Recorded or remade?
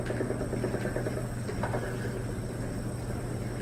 recorded